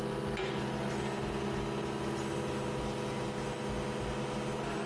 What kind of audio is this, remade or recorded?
recorded